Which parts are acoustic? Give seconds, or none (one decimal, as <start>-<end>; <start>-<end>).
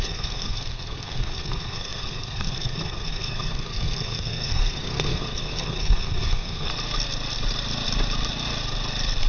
6.7-9.3